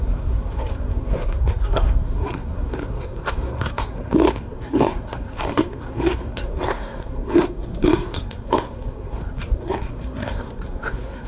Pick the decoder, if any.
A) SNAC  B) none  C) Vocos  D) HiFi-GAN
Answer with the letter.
A